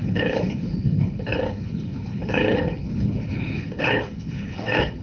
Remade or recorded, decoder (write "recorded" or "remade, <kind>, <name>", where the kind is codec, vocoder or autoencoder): remade, codec, HILCodec